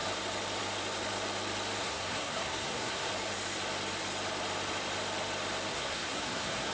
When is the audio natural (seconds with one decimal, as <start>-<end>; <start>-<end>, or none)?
0.0-1.8; 3.1-5.7